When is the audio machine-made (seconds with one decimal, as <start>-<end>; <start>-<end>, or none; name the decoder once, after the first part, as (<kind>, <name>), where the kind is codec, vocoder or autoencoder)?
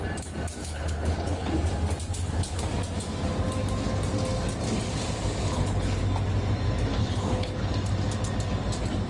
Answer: 0.6-1.5 (codec, HILCodec); 2.1-2.6; 5.4-6.0; 7.0-7.7